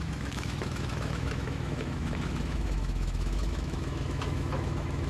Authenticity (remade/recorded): remade